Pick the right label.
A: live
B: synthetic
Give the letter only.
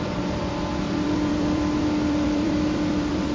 B